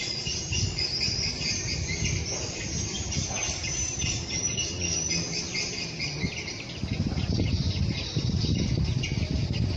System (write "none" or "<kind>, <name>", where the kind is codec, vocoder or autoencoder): none